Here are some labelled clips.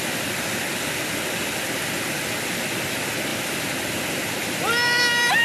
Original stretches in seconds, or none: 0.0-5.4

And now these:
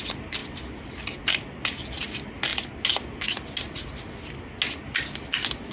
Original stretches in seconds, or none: 0.0-5.7